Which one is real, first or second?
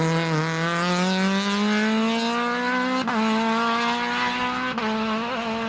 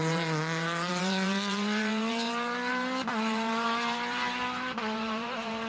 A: first